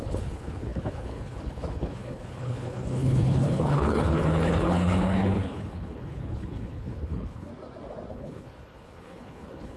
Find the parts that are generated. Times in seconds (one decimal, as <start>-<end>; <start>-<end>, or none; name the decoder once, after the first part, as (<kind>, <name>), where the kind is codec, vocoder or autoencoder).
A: 0.0-7.5 (codec, HILCodec); 8.1-9.8